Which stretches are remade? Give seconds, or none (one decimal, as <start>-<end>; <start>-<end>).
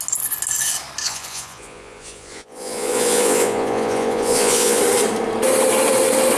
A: 1.0-4.8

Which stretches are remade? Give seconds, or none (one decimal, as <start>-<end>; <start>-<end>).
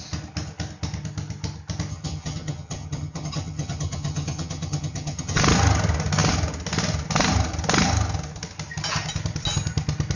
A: 1.9-5.4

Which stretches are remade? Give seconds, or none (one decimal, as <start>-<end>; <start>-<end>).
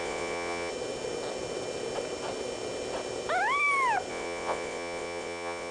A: 0.0-0.7; 4.1-5.7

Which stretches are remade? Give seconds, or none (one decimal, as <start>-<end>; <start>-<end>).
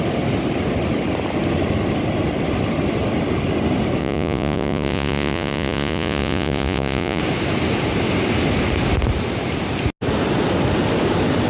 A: 4.0-7.2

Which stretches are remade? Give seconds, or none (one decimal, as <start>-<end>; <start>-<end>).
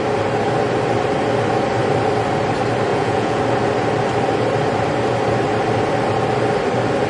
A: 2.9-3.4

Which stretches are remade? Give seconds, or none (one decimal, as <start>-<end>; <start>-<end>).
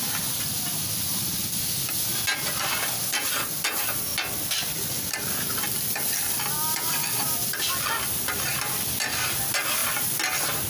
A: none